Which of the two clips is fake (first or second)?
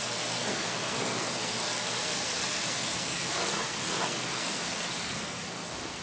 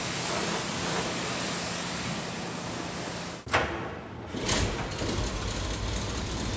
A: first